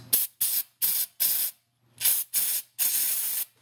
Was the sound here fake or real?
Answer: real